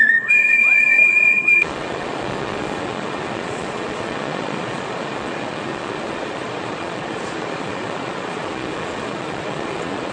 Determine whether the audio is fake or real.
fake